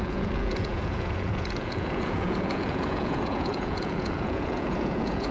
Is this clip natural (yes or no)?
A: no